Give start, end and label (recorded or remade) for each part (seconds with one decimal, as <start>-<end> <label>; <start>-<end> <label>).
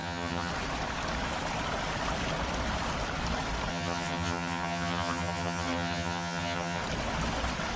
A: 0.0-0.5 remade; 0.5-3.7 recorded; 3.7-6.8 remade; 6.8-7.8 recorded